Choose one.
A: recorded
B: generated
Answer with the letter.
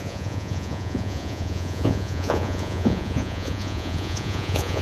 B